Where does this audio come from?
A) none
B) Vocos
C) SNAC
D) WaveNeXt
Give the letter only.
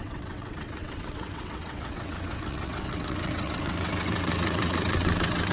D